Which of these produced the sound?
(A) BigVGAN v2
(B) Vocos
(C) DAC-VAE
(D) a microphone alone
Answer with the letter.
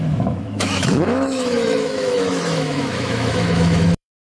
C